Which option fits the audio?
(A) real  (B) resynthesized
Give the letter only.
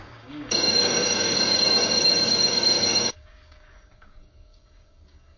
B